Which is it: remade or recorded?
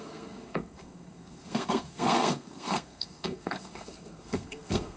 remade